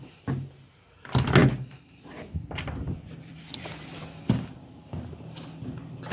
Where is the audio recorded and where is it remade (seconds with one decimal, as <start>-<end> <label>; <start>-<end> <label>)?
0.0-1.4 recorded; 1.4-5.1 remade; 5.1-6.1 recorded